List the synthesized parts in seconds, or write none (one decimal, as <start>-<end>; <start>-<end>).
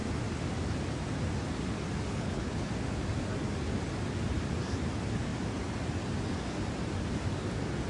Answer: 2.1-2.7